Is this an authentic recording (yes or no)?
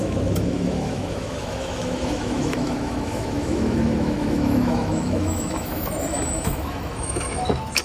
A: no